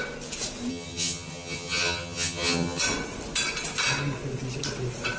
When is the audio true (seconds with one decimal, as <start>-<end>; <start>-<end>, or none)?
0.0-0.7; 2.8-5.2

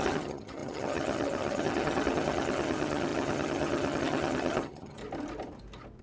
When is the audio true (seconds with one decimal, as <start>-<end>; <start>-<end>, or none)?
5.0-6.0

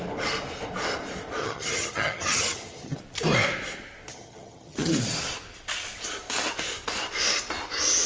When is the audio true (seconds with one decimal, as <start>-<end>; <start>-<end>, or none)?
0.0-1.4; 3.0-4.1; 4.9-8.1

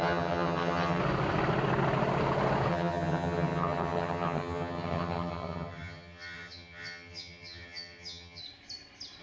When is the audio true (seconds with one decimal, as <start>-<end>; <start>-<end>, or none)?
1.0-2.7; 8.4-9.2

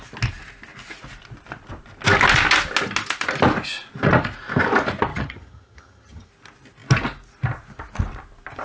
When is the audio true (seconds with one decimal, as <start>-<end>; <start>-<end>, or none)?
0.0-5.1; 6.3-8.6

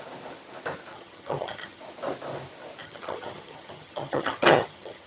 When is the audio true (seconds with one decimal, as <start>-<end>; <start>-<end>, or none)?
0.0-0.9; 1.8-2.8

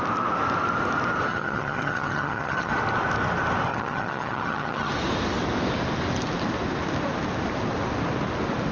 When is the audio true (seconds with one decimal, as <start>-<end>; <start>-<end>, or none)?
0.0-1.3; 2.7-3.7; 4.9-8.7